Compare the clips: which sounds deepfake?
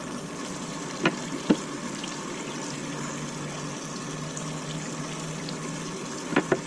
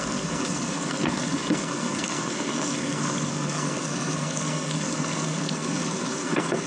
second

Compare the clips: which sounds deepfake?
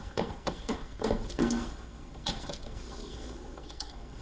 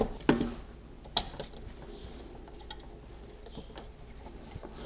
first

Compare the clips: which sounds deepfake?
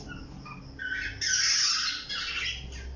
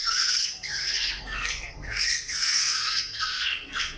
second